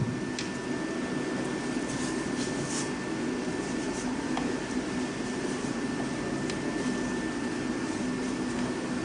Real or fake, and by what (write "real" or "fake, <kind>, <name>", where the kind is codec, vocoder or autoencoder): real